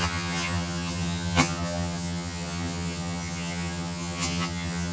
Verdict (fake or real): fake